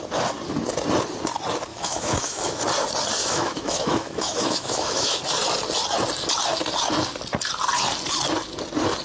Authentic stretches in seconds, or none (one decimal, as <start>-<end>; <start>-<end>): 0.0-1.7; 2.6-3.2; 5.2-9.0